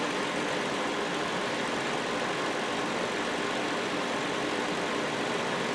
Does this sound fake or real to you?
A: real